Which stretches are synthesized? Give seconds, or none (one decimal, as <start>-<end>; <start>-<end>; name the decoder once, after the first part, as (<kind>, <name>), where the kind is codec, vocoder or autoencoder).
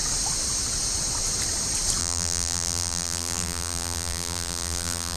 2.0-5.2 (vocoder, BigVGAN v2)